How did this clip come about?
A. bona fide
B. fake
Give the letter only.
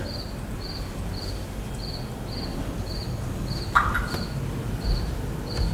A